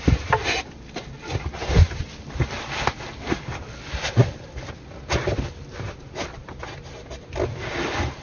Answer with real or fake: real